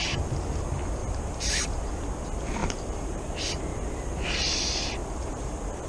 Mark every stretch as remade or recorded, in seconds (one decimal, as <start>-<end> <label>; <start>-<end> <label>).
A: 0.0-1.0 recorded; 1.0-1.9 remade; 1.9-2.6 recorded; 2.6-3.3 remade; 3.3-5.0 recorded; 5.0-5.9 remade